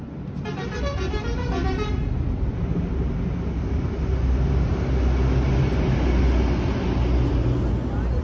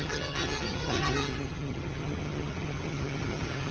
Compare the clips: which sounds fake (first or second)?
second